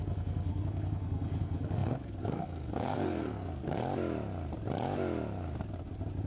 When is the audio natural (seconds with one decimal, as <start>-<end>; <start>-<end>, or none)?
3.8-6.3